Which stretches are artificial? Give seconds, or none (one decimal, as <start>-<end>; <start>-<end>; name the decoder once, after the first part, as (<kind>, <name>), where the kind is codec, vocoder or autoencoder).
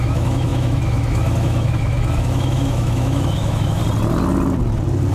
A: 0.0-3.8 (autoencoder, DAC-VAE)